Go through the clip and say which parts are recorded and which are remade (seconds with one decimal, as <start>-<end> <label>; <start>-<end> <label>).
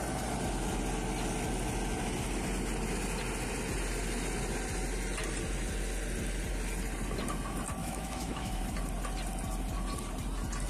0.0-7.8 recorded; 7.8-8.6 remade; 8.6-10.7 recorded